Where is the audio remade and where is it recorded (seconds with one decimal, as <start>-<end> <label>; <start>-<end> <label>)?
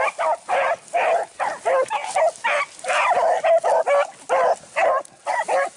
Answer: 0.0-5.8 recorded